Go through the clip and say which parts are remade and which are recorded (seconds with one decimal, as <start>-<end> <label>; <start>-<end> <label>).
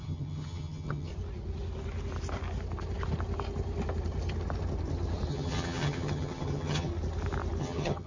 0.0-1.1 remade; 1.1-5.3 recorded; 5.3-6.9 remade; 6.9-7.6 recorded; 7.6-8.1 remade